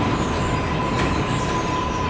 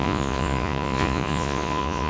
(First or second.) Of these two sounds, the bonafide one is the first